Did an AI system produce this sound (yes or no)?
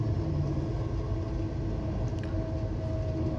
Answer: no